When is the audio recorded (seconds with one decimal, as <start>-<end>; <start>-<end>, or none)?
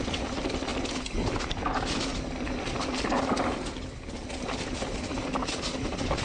0.0-6.2